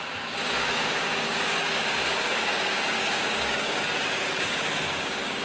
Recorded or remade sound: remade